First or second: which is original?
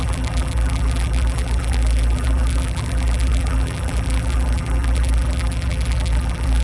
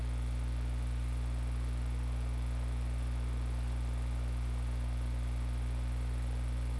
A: second